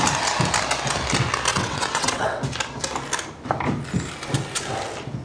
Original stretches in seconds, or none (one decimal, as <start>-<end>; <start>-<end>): 0.0-1.5; 2.4-5.2